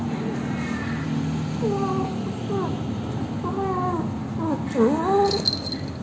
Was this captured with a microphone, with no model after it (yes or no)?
yes